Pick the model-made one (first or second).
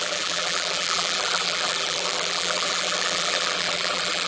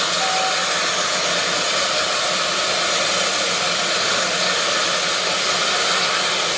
first